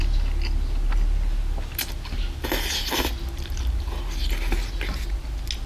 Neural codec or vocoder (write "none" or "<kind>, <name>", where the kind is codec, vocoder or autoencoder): none